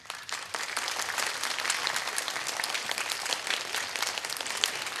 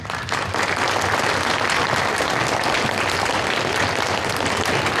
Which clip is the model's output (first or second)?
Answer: first